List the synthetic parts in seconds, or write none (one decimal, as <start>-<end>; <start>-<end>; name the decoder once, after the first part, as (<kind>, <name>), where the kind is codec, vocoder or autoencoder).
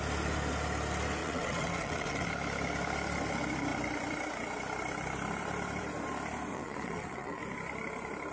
1.2-2.3 (vocoder, WaveNeXt); 6.5-7.4